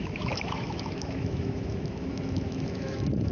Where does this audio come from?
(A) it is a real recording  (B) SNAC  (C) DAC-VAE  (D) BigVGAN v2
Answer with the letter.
C